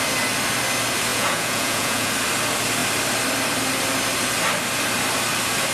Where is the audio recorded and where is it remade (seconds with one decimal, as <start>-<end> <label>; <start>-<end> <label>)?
0.0-1.1 recorded; 1.1-2.1 remade; 2.1-5.7 recorded

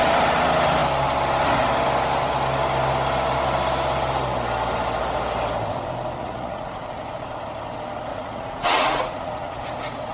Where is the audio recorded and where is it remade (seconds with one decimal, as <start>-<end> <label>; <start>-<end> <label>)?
0.0-6.2 recorded; 6.2-7.0 remade; 7.0-8.1 recorded; 8.1-9.6 remade; 9.6-10.1 recorded

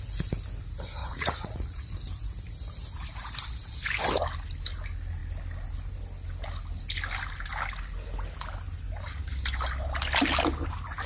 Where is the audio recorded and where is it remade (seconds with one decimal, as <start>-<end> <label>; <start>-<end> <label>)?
0.0-1.0 recorded; 1.0-1.9 remade; 1.9-11.1 recorded